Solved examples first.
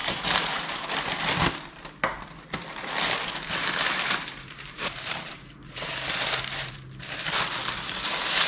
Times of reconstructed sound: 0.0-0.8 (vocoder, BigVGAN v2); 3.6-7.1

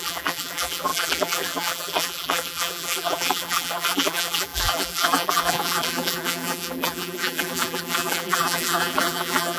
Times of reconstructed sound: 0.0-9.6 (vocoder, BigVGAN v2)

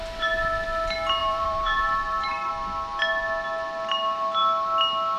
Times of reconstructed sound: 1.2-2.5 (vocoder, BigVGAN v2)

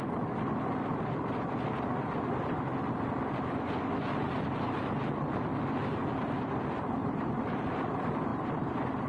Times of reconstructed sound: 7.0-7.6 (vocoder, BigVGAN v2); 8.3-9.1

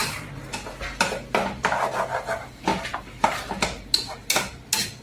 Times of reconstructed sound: 0.0-0.7 (vocoder, BigVGAN v2)